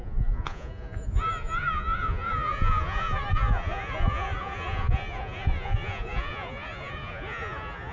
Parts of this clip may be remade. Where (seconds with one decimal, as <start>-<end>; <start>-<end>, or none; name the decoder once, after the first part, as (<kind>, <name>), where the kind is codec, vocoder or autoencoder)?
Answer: 0.0-7.9 (vocoder, Vocos)